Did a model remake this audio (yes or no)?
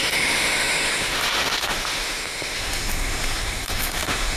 yes